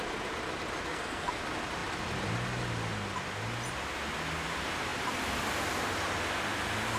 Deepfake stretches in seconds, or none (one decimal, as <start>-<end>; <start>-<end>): 0.9-1.4

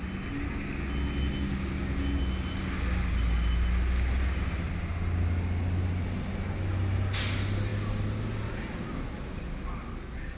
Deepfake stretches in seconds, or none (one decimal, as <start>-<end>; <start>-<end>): none